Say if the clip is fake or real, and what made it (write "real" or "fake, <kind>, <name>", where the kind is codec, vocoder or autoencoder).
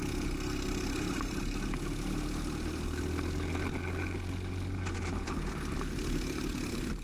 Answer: real